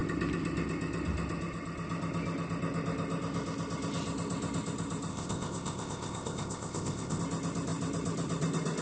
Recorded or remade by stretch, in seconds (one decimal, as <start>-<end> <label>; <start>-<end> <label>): 0.0-5.1 recorded; 5.1-7.2 remade; 7.2-8.8 recorded